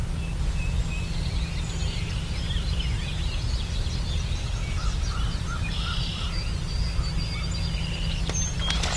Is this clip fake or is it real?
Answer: real